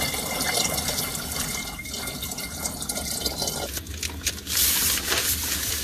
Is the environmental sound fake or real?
fake